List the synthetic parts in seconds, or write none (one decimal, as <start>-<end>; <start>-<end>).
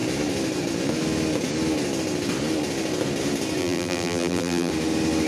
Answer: 3.6-4.7